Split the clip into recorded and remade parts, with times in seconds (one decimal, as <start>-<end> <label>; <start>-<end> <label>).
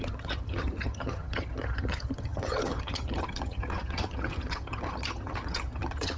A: 0.0-6.2 remade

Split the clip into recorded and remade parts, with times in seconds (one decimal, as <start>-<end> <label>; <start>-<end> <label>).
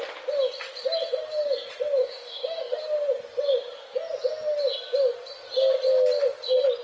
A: 0.0-2.0 recorded; 2.0-2.8 remade; 2.8-6.8 recorded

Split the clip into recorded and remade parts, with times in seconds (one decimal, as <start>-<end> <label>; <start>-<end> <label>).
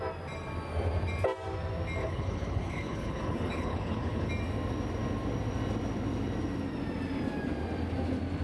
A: 0.0-2.0 recorded; 2.0-4.3 remade; 4.3-8.4 recorded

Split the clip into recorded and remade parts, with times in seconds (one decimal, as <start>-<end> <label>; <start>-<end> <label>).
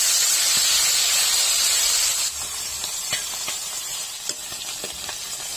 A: 0.0-2.0 recorded; 2.0-3.1 remade; 3.1-5.6 recorded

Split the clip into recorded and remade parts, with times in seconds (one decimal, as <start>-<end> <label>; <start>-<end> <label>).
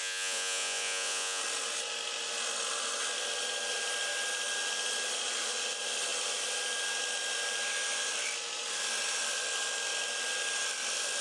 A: 0.0-1.4 remade; 1.4-11.2 recorded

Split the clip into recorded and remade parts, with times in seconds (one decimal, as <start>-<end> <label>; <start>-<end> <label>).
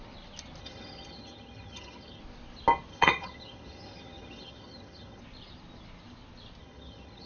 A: 0.0-0.6 recorded; 0.6-2.2 remade; 2.2-2.9 recorded; 2.9-5.2 remade; 5.2-6.6 recorded; 6.6-7.3 remade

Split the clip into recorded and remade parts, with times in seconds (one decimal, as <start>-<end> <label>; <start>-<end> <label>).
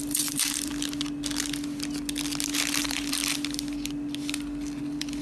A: 0.0-0.7 remade; 0.7-2.8 recorded; 2.8-3.2 remade; 3.2-4.8 recorded; 4.8-5.2 remade